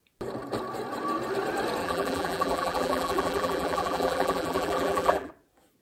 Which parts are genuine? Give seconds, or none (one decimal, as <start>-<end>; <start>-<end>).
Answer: 0.0-1.8; 5.3-5.8